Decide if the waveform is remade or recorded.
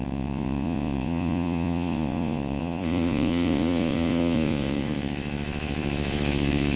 remade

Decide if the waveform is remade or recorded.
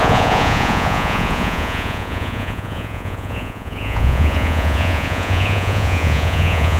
remade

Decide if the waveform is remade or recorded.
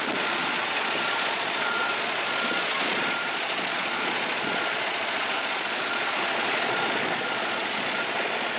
remade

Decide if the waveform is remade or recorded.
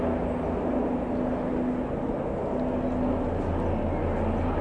recorded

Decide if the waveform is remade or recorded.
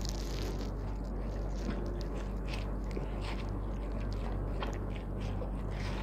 recorded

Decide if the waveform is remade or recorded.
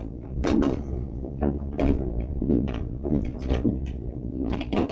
remade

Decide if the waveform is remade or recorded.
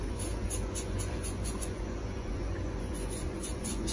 remade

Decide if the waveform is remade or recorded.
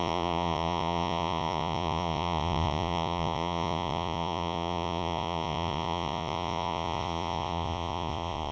remade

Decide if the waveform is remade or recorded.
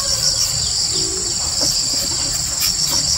recorded